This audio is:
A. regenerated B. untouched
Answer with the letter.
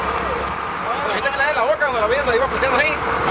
A